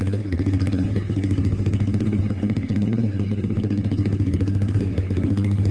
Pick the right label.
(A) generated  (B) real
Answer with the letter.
A